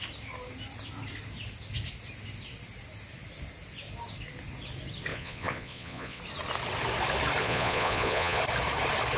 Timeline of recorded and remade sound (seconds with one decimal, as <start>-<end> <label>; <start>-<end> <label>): 0.0-5.1 recorded; 5.1-6.2 remade; 6.2-7.4 recorded; 7.4-8.4 remade; 8.4-9.2 recorded